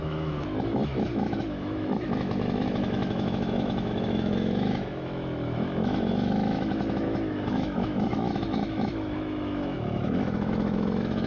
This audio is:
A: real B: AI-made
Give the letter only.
B